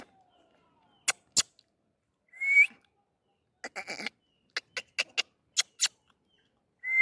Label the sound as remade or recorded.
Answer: recorded